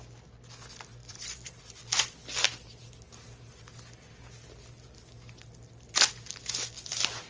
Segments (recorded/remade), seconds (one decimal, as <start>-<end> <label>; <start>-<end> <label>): 0.0-1.0 recorded; 1.0-1.6 remade; 1.6-7.3 recorded